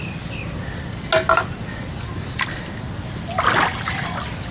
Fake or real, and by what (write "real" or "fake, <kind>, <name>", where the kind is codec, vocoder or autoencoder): real